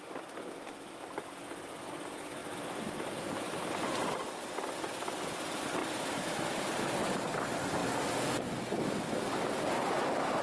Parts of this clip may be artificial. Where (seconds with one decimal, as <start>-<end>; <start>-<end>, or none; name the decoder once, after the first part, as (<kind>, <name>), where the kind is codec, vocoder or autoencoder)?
5.8-7.2 (vocoder, BigVGAN v2)